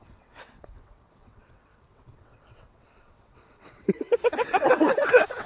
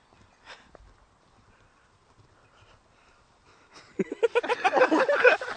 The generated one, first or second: first